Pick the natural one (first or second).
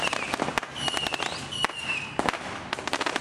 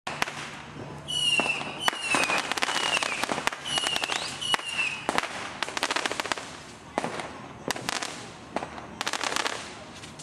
second